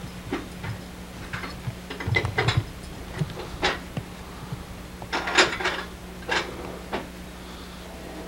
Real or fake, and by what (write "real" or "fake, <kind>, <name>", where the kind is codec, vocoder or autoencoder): real